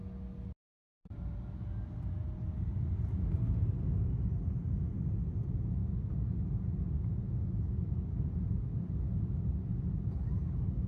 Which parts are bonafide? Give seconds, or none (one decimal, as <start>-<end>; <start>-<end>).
0.0-10.9